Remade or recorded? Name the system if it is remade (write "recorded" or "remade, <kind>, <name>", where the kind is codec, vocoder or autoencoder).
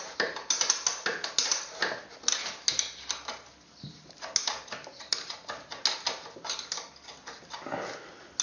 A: recorded